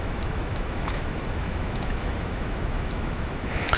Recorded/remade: remade